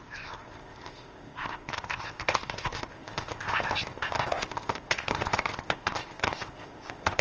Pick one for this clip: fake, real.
fake